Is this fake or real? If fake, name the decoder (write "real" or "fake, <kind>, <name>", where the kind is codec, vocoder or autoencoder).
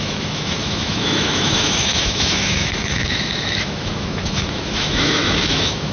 fake, autoencoder, DAC-VAE